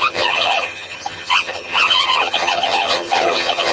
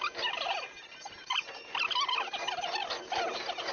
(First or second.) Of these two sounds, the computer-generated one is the first